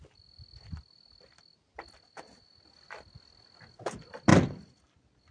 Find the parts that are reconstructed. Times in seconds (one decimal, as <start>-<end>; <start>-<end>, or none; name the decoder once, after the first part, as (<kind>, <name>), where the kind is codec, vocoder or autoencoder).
none